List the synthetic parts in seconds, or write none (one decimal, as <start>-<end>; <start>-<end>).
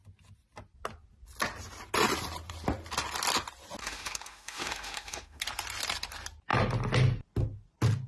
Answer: 3.8-5.4